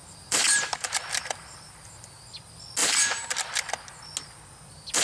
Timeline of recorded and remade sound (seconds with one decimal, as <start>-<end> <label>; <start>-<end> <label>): 0.0-2.2 remade; 2.2-2.8 recorded; 2.8-3.3 remade; 3.3-5.0 recorded